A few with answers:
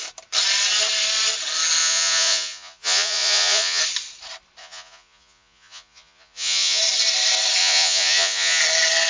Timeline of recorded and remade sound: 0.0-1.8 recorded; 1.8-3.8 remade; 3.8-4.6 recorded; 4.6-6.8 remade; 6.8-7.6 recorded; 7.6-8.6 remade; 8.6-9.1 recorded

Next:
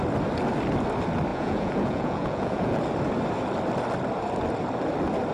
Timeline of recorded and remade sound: 0.0-1.3 recorded; 1.3-2.8 remade; 2.8-5.3 recorded

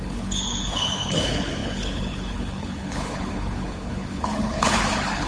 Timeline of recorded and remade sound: 0.0-5.3 remade

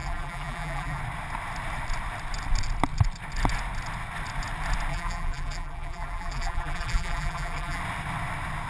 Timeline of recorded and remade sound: 0.0-1.0 remade; 1.0-4.9 recorded; 4.9-7.8 remade; 7.8-8.7 recorded

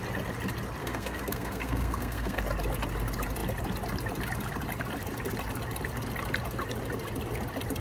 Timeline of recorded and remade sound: 0.0-0.8 recorded; 0.8-2.4 remade; 2.4-7.8 recorded

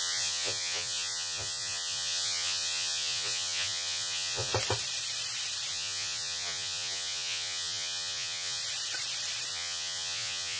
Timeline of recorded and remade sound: 0.0-4.5 remade; 4.5-5.7 recorded; 5.7-8.6 remade; 8.6-9.5 recorded; 9.5-10.6 remade